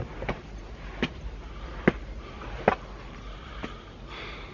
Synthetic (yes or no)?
no